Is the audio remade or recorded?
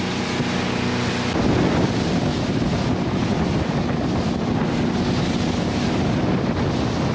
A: recorded